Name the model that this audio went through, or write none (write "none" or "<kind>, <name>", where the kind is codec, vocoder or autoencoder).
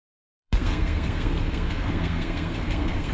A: codec, SNAC